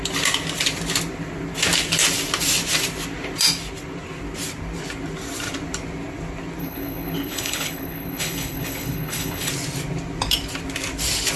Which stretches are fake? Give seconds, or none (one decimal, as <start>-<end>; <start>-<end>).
6.6-9.5